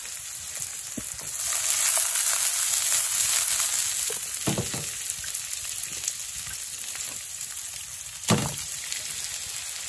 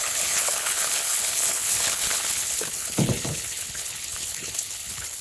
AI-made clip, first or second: second